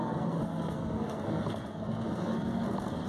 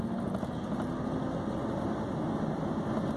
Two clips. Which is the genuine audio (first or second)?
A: second